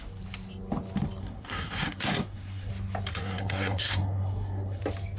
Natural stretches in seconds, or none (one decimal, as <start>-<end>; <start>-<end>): 0.0-1.2; 2.7-3.1; 4.8-5.2